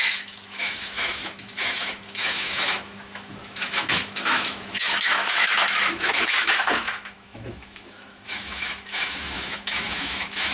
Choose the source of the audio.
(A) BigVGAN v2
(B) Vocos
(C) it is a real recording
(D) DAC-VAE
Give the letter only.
D